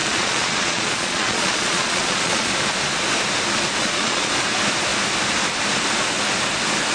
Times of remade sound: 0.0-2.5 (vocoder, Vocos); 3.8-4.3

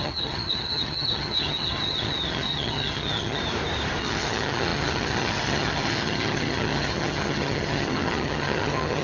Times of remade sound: 0.0-3.4 (vocoder, HiFi-GAN); 4.0-9.0